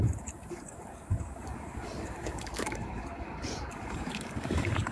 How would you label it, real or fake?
fake